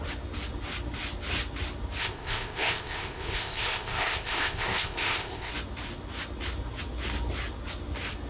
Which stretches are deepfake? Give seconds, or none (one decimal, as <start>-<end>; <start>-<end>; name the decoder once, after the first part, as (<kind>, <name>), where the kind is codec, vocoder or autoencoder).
2.0-5.5 (codec, ZipCodec)